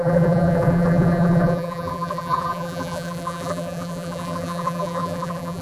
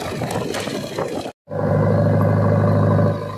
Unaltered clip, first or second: second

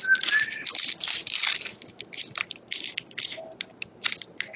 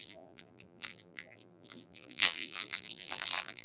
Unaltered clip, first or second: first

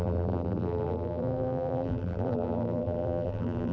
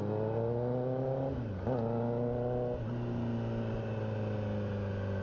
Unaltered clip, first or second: second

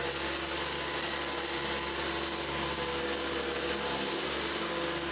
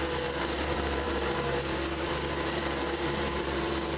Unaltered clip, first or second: first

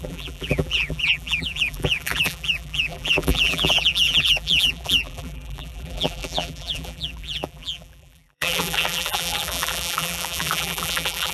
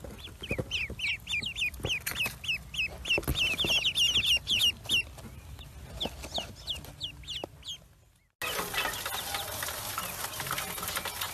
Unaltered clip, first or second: second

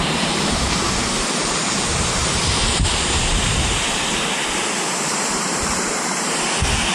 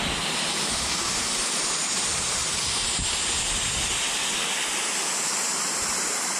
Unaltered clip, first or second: second